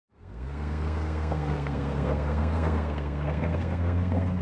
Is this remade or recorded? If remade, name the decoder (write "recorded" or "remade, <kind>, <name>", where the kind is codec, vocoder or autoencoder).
remade, codec, SNAC